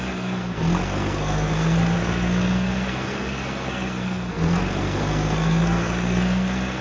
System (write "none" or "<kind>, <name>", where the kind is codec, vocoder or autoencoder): codec, SNAC